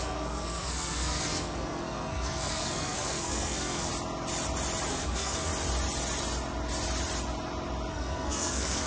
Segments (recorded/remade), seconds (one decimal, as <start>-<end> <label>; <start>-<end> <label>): 0.0-3.9 remade; 3.9-4.9 recorded; 4.9-5.5 remade; 5.5-7.9 recorded; 7.9-8.9 remade